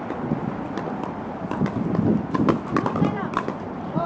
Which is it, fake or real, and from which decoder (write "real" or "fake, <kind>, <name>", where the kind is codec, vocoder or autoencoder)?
real